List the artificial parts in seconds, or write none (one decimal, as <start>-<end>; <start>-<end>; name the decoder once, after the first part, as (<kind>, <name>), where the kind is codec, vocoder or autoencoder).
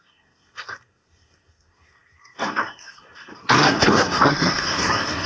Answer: 0.0-5.3 (codec, SNAC)